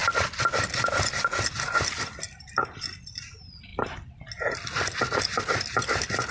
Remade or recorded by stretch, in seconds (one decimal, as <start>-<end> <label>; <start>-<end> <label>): 0.0-6.3 recorded